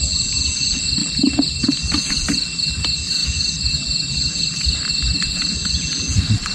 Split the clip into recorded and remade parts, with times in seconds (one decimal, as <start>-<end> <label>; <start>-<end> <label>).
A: 0.0-3.2 recorded; 3.2-4.4 remade; 4.4-6.5 recorded